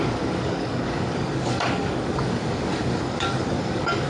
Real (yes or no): no